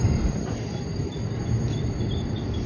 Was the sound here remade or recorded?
recorded